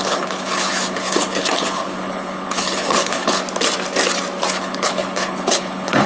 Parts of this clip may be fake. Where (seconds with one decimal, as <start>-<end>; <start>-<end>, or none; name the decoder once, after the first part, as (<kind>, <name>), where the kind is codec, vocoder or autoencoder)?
0.0-3.4 (codec, HILCodec); 4.5-6.1